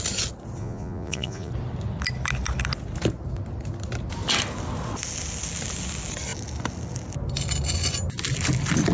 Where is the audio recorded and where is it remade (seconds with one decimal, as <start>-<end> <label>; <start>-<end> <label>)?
0.0-0.6 recorded; 0.6-1.5 remade; 1.5-8.9 recorded